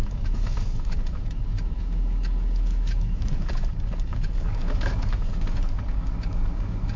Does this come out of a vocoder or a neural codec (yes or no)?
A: yes